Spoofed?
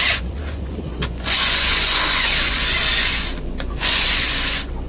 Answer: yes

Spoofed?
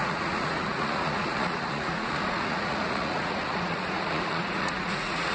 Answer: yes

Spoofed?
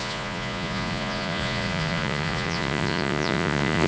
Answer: yes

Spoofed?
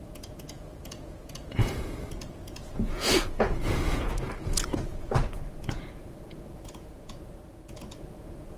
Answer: yes